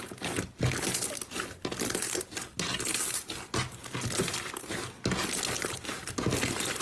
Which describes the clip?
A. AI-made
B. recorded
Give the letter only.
B